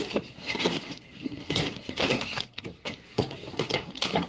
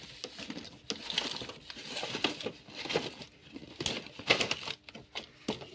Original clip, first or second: second